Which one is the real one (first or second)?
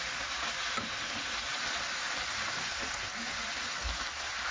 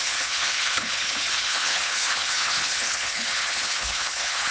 first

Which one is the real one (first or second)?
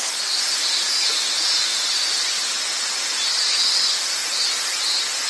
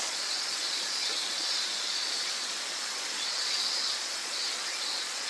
first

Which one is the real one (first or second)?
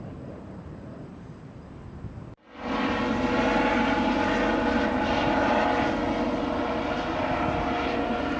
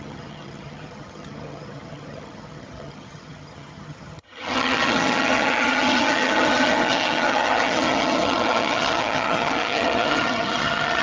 first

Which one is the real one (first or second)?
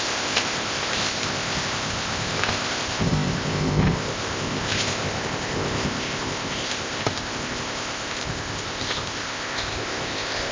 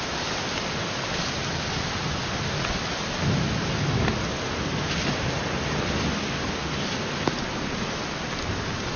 second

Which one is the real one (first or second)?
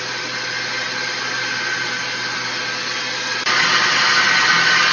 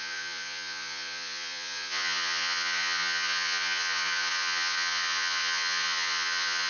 first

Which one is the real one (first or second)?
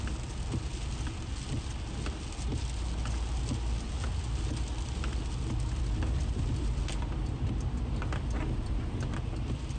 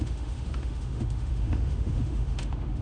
first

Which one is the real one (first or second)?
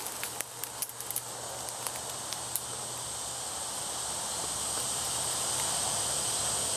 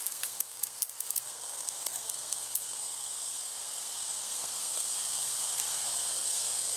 first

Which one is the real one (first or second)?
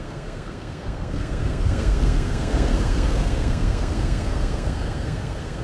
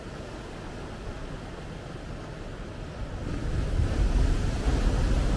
second